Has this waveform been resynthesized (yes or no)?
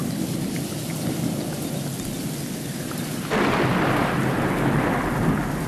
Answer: no